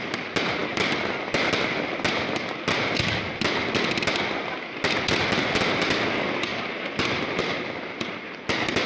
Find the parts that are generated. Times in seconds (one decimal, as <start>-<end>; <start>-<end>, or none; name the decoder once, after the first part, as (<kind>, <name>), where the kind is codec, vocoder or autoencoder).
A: none